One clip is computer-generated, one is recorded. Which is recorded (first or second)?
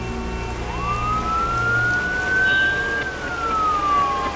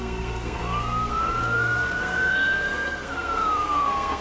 first